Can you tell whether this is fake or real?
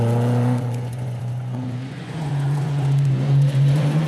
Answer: fake